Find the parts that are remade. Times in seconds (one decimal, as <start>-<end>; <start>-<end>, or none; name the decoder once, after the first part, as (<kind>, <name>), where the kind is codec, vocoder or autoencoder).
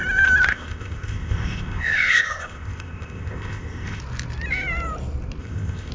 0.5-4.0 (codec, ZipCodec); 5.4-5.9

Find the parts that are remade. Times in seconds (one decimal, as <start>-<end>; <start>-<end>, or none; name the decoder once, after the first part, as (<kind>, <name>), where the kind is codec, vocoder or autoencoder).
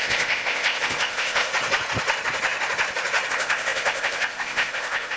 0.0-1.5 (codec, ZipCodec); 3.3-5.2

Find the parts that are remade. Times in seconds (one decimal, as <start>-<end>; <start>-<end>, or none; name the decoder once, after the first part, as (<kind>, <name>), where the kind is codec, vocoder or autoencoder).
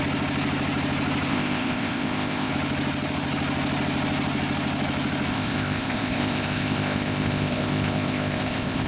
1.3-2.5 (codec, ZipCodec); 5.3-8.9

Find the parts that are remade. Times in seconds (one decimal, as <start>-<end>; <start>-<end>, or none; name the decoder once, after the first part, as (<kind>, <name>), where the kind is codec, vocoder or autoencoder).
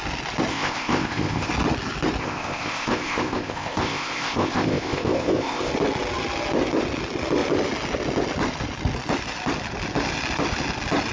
0.5-1.5 (codec, ZipCodec); 2.2-5.7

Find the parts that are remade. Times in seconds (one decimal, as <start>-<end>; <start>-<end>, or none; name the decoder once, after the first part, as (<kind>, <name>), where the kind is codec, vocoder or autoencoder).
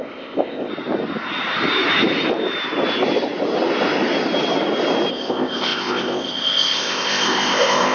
0.0-0.7 (codec, ZipCodec); 5.1-7.9